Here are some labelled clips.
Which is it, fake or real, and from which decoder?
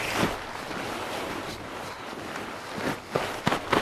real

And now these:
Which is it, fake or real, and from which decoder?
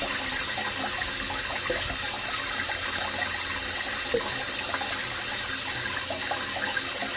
real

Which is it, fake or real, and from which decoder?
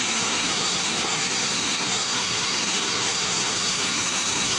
fake, codec, SNAC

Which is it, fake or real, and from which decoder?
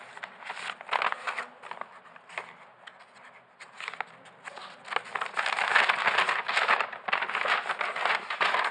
real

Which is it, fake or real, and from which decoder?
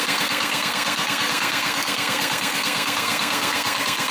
fake, codec, SNAC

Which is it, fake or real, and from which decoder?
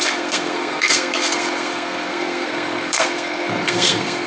fake, codec, SNAC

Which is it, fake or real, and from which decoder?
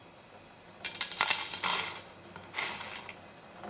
real